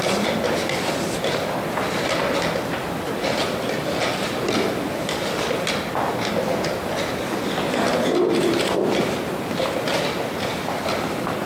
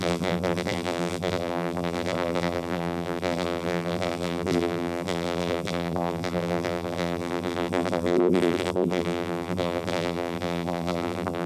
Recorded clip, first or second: first